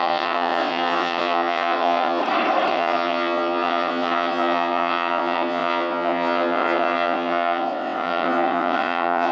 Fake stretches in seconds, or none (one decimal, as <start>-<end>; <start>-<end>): 0.0-2.2; 2.7-9.3

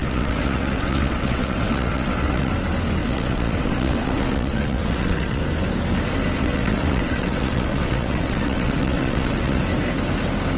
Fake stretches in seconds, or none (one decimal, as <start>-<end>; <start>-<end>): 0.0-2.5; 3.0-5.4; 6.4-9.6

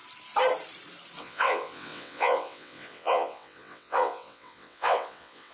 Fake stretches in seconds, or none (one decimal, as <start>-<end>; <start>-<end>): 1.2-5.5

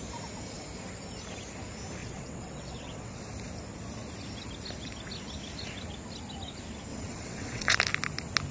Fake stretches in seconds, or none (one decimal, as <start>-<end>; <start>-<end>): 2.0-3.2; 6.9-7.8

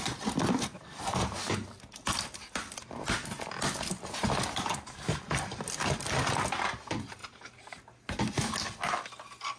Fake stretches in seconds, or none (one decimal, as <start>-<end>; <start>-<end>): none